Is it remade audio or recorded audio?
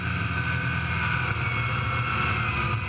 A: recorded